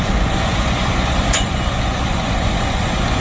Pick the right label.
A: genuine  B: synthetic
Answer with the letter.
B